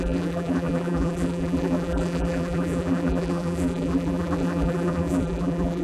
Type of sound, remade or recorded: remade